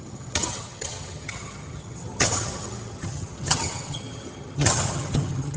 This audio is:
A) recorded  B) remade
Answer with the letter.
B